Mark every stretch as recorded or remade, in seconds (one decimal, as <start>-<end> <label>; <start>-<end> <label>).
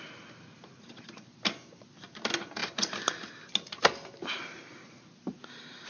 0.0-5.9 recorded